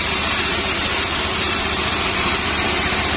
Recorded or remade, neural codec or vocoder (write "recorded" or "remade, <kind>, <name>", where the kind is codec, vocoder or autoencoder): remade, vocoder, BigVGAN v2